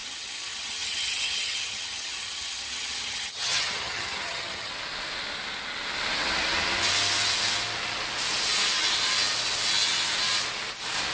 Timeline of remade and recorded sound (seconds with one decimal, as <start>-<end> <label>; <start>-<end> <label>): 0.0-4.7 remade; 4.7-11.1 recorded